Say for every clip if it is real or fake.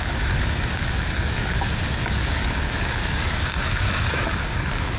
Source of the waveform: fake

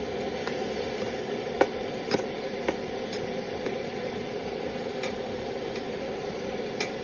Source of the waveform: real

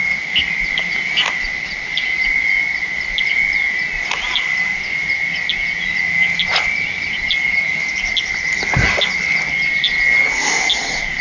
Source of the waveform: real